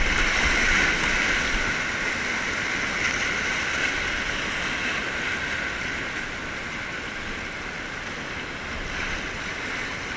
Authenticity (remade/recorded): recorded